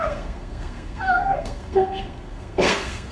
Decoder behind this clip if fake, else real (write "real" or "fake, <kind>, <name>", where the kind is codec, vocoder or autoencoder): fake, codec, SNAC